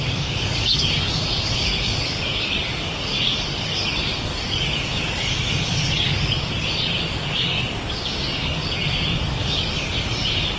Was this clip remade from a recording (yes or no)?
yes